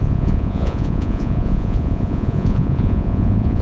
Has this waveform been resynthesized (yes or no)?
yes